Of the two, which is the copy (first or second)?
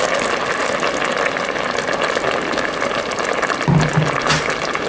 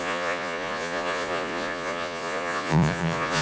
second